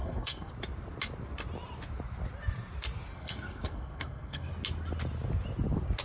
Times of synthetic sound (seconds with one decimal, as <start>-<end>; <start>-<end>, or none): 0.0-0.5; 3.1-4.5